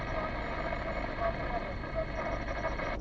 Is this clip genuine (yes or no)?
yes